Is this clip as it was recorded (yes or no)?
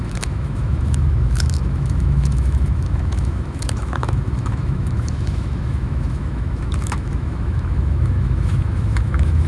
no